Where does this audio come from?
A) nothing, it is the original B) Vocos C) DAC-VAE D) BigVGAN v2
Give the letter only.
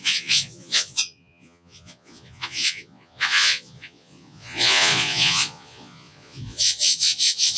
B